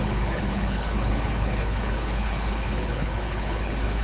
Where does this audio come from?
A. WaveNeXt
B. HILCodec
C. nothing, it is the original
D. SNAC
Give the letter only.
B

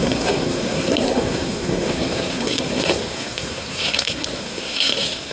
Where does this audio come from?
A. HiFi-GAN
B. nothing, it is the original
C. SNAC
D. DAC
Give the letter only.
C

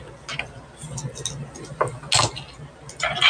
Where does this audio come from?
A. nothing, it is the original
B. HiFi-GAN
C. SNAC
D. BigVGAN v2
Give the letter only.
A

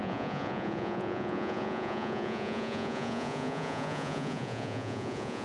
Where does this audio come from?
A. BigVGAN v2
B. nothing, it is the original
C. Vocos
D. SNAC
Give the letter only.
C